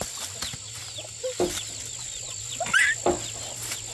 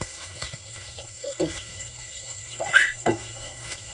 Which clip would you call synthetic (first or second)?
second